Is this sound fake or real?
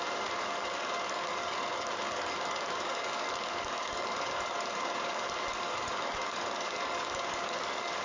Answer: fake